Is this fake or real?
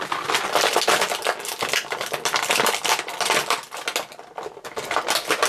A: real